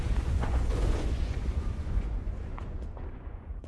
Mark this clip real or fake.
fake